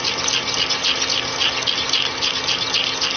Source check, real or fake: real